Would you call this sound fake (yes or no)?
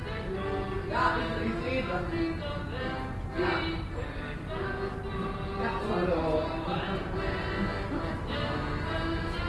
no